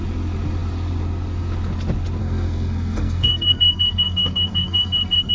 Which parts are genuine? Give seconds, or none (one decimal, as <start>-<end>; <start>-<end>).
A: 0.0-2.2

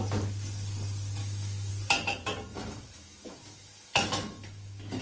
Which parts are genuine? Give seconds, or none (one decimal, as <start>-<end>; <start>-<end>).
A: 0.0-1.2; 1.7-2.5